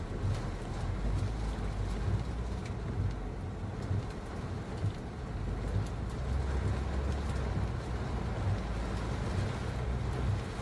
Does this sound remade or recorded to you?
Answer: recorded